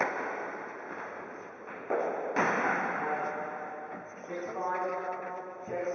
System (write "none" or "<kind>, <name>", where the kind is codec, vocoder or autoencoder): none